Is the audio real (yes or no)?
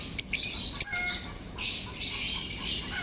yes